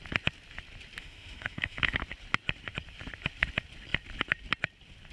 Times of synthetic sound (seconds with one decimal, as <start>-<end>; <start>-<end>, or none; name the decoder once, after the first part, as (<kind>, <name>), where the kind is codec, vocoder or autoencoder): 1.0-1.9 (autoencoder, DAC-VAE)